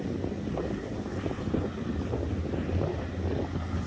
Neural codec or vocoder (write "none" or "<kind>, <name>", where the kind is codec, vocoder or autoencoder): none